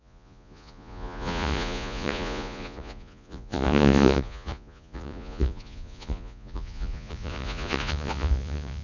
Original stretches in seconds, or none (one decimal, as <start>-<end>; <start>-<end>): none